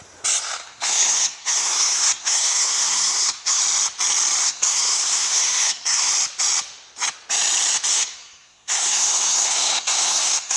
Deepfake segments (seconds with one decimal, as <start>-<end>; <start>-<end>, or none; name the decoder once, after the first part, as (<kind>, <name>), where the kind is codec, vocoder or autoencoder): 0.6-3.6 (codec, SNAC); 4.4-6.1; 7.9-10.6